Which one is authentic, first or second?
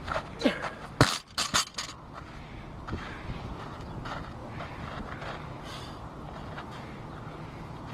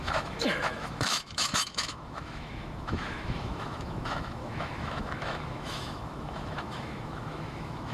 first